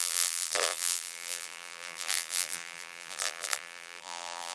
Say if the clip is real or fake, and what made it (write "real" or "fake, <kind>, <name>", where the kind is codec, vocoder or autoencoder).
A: fake, vocoder, BigVGAN v2